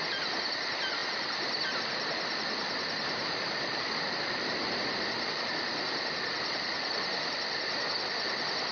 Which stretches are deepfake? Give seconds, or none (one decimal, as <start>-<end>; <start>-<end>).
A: 0.0-8.7